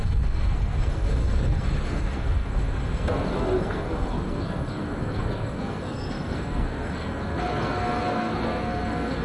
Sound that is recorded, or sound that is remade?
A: remade